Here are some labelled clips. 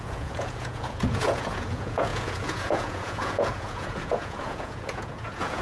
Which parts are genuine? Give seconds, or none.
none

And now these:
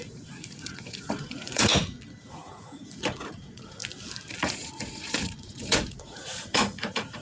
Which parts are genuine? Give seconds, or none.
1.7-2.3; 3.8-4.4